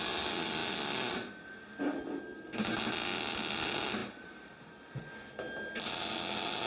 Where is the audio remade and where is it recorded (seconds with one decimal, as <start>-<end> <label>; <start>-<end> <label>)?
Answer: 0.0-6.7 recorded